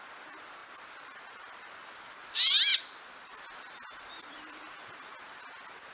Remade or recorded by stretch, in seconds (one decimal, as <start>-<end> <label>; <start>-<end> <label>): 0.0-5.9 recorded